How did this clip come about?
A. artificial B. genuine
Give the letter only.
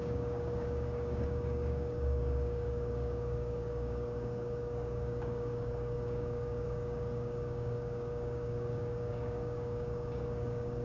A